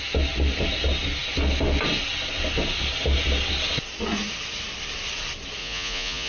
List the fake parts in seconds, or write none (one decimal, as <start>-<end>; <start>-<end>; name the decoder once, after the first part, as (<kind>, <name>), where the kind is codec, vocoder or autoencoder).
5.6-6.3 (vocoder, Vocos)